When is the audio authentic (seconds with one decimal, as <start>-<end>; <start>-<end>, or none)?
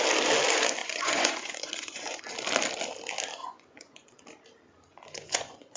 0.0-0.8; 2.2-3.4; 4.2-4.9